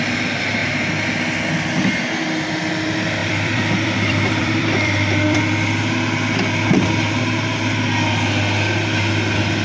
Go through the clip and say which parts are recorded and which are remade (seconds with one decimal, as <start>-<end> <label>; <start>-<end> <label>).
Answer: 0.0-3.2 recorded; 3.2-5.4 remade; 5.4-9.6 recorded